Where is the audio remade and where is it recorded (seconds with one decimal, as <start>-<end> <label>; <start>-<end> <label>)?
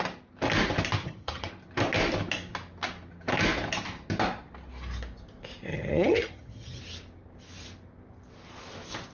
0.0-1.0 recorded; 1.0-1.5 remade; 1.5-5.7 recorded; 5.7-6.8 remade; 6.8-9.1 recorded